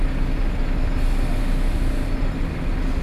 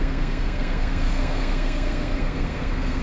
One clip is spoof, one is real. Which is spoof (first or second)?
second